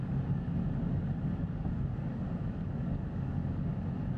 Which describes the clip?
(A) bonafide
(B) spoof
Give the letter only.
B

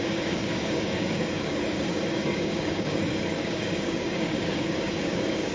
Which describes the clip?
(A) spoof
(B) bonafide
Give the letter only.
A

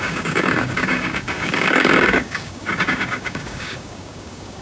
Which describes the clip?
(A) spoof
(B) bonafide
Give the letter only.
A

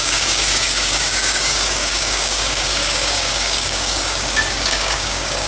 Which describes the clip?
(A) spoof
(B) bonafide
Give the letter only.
A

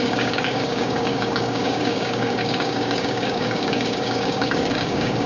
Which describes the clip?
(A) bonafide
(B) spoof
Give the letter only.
B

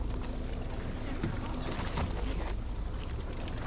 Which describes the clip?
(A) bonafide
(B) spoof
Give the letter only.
A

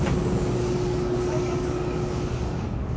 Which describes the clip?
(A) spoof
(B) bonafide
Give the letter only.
A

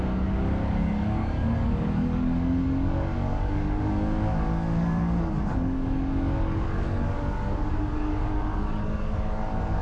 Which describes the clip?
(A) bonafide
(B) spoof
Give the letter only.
B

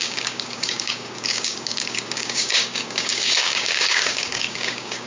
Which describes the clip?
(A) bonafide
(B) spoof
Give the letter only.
B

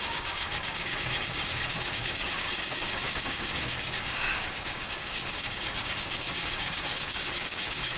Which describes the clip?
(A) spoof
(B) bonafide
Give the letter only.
A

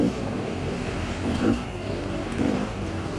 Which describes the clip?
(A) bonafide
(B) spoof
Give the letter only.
B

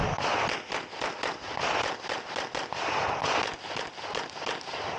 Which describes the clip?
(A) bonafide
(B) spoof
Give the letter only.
A